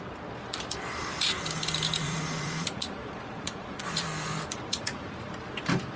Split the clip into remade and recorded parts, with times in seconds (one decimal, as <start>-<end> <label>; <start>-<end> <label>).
0.0-2.0 recorded; 2.0-3.8 remade; 3.8-4.7 recorded; 4.7-5.3 remade; 5.3-6.0 recorded